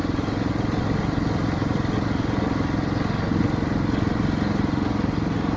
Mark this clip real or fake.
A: real